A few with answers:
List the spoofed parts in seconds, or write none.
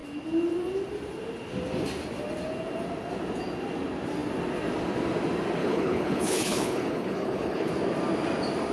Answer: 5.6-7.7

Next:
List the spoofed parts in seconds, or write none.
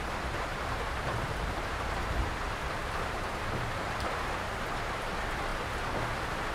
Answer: 0.5-4.4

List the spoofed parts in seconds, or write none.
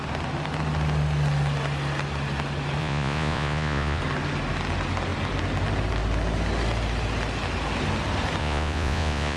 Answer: 2.8-4.0; 8.4-9.4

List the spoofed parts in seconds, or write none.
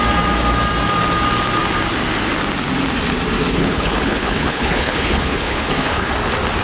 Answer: 3.5-6.1